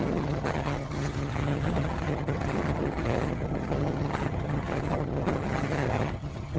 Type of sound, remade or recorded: remade